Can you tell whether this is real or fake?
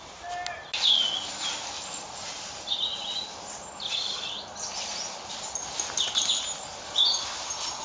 real